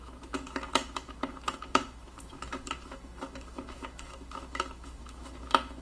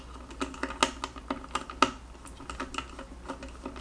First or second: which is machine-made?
first